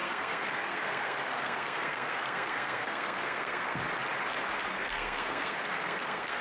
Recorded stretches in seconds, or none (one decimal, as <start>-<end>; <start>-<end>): 3.8-4.7